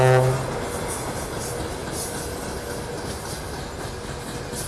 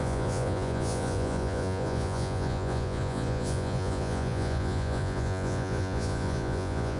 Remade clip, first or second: second